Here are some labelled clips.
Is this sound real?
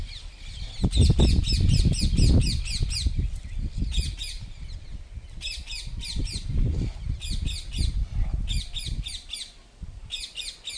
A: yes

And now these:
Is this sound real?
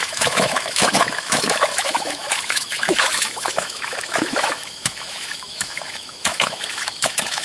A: no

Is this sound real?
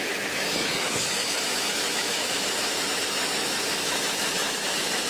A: no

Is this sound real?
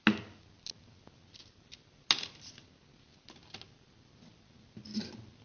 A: yes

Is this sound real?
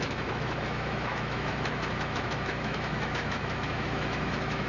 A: no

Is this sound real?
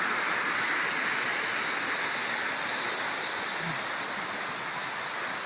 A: yes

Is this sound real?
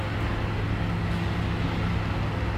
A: yes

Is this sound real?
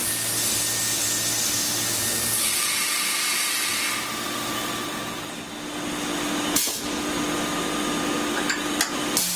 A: yes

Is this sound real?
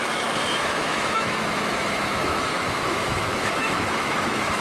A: no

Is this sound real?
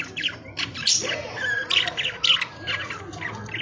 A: yes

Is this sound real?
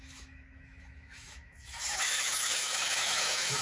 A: no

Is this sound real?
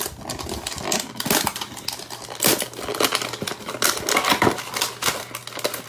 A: yes